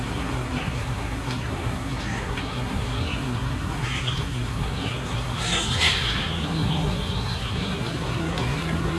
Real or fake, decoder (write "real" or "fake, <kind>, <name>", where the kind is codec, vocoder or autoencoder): fake, codec, SNAC